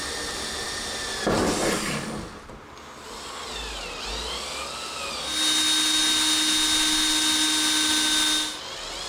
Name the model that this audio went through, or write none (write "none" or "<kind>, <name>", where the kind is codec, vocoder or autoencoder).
none